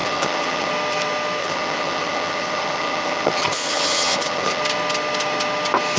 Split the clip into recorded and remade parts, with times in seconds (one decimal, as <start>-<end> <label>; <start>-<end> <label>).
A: 0.0-0.7 remade; 0.7-1.4 recorded; 1.4-4.6 remade; 4.6-6.0 recorded